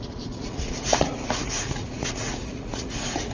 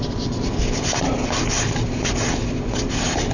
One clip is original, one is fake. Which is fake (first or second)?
first